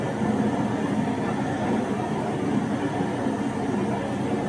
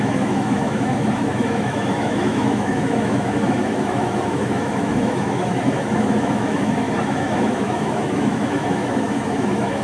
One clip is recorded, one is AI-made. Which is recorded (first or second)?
first